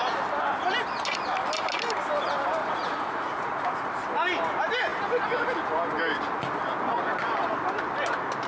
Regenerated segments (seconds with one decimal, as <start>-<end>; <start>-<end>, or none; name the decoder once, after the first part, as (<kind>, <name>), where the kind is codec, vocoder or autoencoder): 2.6-3.9 (vocoder, Vocos)